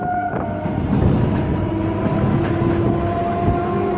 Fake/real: real